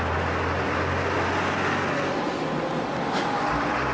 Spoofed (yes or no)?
no